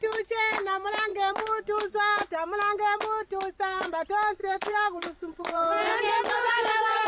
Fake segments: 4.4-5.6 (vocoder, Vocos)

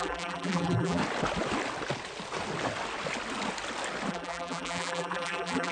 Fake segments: 0.0-1.0 (vocoder, BigVGAN v2); 4.1-5.7

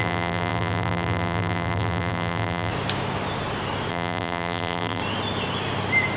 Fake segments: 0.0-2.7 (vocoder, BigVGAN v2); 3.9-5.0

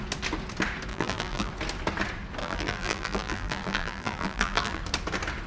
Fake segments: 0.9-1.5 (vocoder, BigVGAN v2); 2.4-4.8

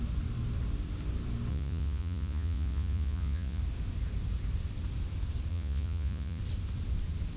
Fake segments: 1.5-3.6 (vocoder, Vocos); 5.5-6.4

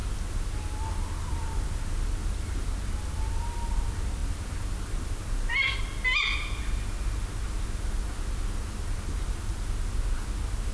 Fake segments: none